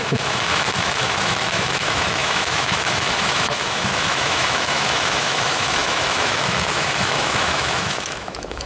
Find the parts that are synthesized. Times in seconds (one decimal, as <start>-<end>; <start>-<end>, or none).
0.0-8.7